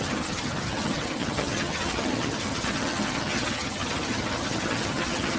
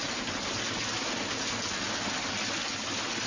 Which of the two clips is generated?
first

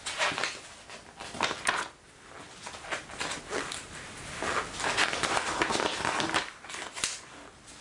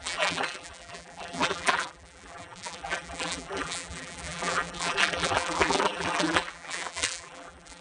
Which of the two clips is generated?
second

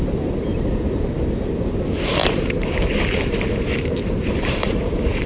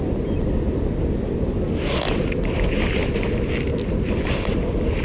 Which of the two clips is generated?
first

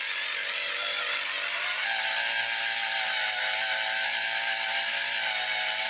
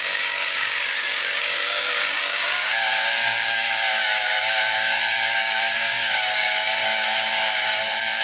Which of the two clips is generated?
second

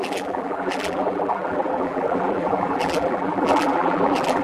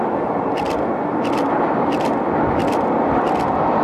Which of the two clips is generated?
first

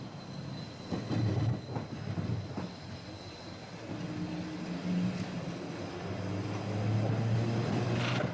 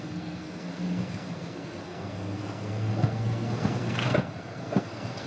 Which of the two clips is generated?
second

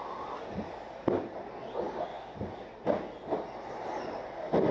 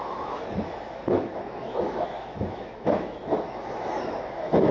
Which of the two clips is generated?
second